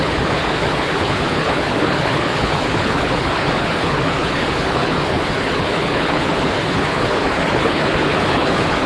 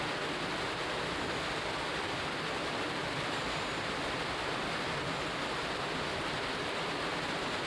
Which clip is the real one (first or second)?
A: second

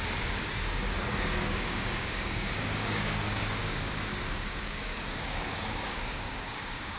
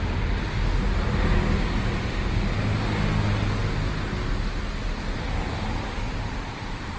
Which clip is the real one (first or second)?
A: second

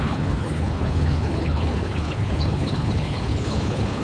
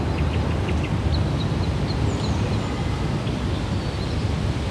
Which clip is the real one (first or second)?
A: second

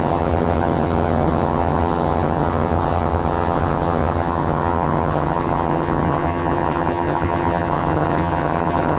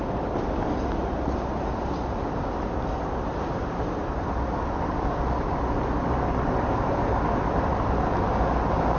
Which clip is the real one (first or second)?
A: second